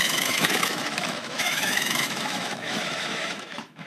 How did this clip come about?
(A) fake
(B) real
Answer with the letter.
A